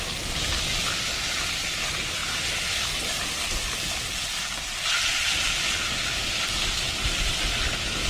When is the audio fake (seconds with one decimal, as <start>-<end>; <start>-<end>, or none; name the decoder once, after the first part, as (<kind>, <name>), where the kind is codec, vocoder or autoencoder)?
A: none